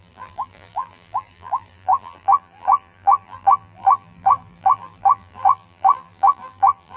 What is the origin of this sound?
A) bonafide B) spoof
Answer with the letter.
B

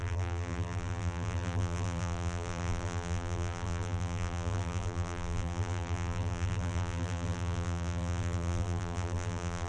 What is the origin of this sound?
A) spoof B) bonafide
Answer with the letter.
A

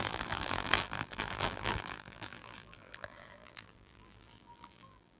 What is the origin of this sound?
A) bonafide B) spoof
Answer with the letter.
B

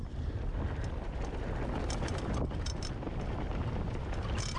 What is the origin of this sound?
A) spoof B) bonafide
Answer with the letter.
B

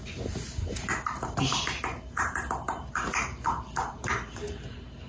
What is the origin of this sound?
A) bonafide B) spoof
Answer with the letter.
B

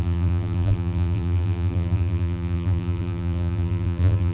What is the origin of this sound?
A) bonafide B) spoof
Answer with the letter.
B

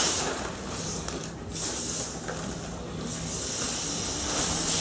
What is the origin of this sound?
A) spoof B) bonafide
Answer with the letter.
B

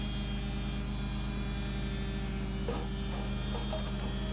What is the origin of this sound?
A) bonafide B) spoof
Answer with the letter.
A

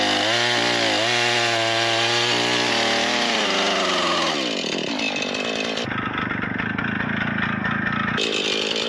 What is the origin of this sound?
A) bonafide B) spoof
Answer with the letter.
A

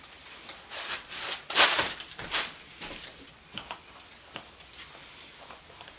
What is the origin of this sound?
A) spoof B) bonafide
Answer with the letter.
A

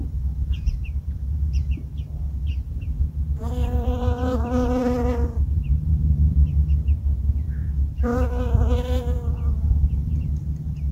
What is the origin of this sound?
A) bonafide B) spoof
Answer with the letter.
B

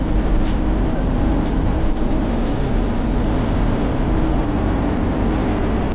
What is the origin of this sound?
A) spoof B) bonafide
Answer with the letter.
A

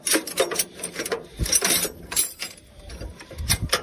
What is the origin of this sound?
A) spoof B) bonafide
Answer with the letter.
A